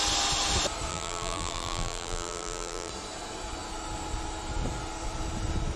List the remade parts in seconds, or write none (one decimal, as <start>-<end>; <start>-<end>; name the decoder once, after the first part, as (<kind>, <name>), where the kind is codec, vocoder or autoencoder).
0.9-2.9 (vocoder, BigVGAN v2)